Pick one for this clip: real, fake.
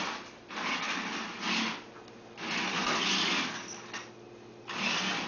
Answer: real